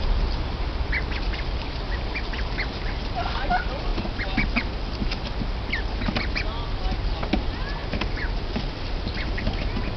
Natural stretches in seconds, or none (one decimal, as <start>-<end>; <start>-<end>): 0.0-10.0